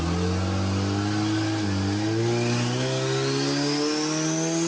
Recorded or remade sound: recorded